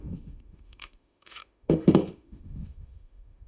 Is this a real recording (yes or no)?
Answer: no